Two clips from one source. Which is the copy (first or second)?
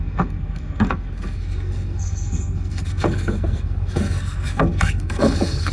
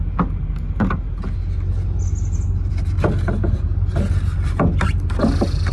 first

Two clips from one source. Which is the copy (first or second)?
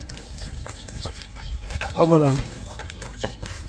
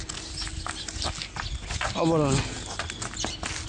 first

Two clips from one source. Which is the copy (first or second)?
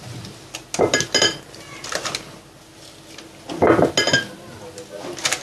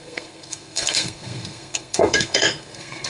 second